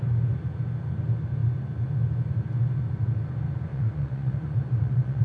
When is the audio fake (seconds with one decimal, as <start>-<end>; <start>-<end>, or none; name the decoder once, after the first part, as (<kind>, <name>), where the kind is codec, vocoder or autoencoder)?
3.7-5.2 (vocoder, Vocos)

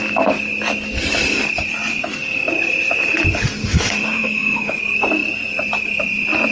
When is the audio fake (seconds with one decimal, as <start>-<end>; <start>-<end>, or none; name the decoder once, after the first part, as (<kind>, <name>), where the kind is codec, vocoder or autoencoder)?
3.5-4.8 (autoencoder, DAC-VAE)

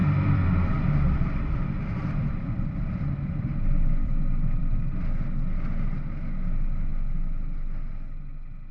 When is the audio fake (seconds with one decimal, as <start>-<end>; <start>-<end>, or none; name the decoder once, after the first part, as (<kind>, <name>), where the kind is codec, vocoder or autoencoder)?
0.0-4.6 (vocoder, BigVGAN v2)